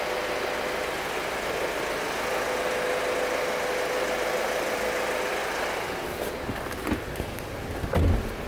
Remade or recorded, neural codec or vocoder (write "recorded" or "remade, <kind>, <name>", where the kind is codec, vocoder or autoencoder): recorded